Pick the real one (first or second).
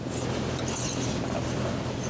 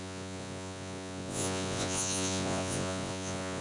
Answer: first